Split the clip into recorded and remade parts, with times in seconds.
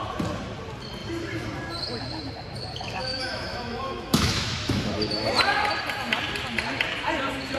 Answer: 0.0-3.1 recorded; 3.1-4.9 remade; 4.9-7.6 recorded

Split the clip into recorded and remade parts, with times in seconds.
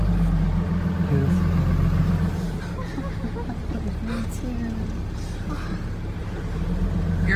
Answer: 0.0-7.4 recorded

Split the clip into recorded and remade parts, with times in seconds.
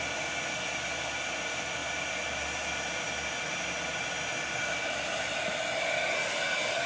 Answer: 0.0-6.9 recorded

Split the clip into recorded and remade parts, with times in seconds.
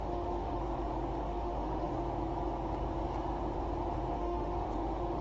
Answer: 0.0-0.6 remade; 0.6-1.2 recorded; 1.2-1.9 remade; 1.9-4.1 recorded; 4.1-5.2 remade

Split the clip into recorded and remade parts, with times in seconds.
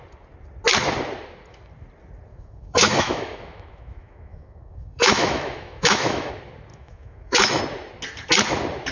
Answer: 0.0-2.3 recorded; 2.3-6.3 remade; 6.3-6.7 recorded; 6.7-7.6 remade; 7.6-8.9 recorded